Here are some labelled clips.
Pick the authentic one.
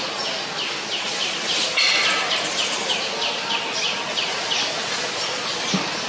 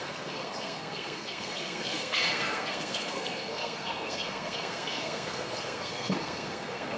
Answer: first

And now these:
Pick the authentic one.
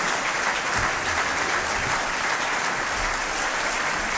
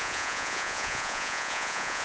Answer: first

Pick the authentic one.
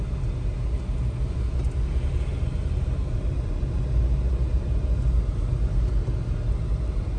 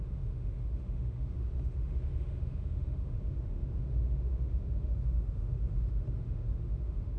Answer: first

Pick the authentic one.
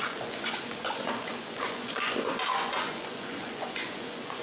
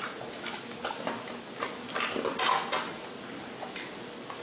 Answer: second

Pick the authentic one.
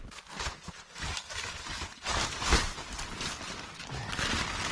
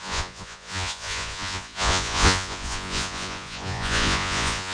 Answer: first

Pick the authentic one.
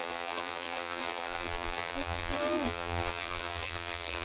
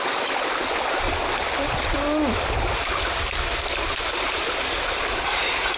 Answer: second